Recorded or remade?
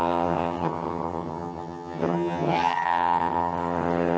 remade